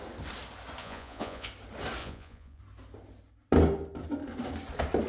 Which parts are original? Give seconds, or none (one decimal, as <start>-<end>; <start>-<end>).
0.0-0.8; 1.5-2.0; 2.6-5.1